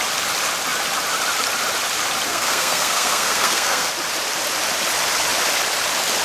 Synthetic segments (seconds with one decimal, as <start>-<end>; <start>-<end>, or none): 2.3-3.9